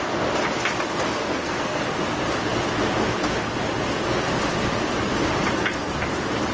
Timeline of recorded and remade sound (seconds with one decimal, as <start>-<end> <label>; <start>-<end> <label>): 0.0-1.2 recorded; 1.2-1.8 remade; 1.8-6.5 recorded